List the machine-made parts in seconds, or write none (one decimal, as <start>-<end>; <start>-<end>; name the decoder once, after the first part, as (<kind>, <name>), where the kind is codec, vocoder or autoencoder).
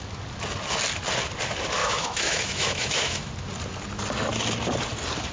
1.8-3.3 (autoencoder, DAC-VAE)